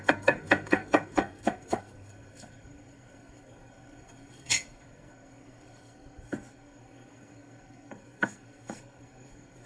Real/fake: fake